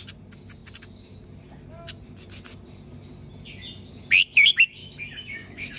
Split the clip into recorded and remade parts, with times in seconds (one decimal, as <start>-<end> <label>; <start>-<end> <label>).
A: 0.0-4.8 recorded; 4.8-5.8 remade